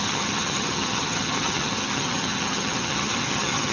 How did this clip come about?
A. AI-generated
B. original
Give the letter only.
A